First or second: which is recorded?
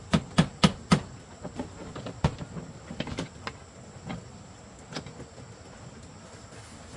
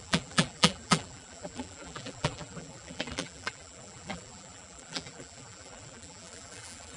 first